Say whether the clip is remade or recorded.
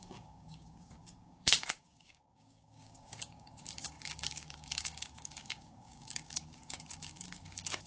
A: remade